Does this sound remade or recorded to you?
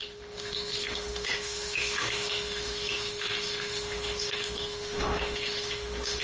remade